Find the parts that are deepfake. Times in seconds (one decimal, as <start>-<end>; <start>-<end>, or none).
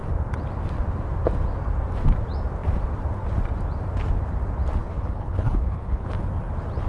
4.8-6.1